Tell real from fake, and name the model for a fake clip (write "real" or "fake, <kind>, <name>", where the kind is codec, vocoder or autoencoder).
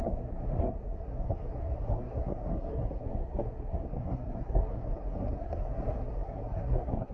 fake, codec, SNAC